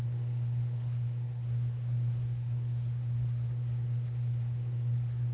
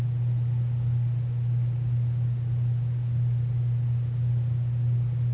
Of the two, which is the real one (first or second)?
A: second